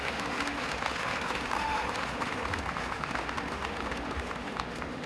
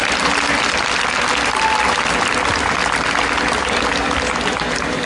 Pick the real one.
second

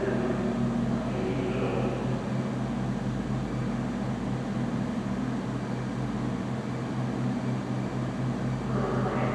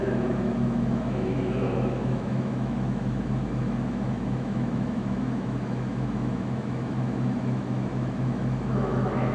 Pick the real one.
first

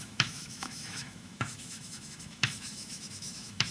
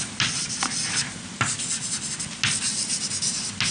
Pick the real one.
second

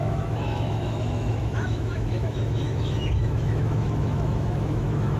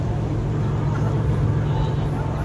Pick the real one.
second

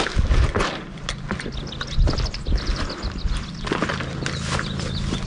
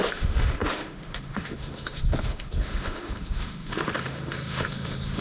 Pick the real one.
first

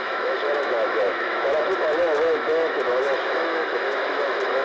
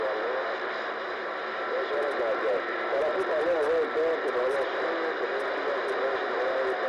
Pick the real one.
second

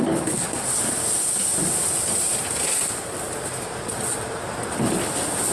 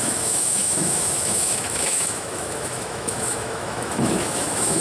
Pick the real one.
first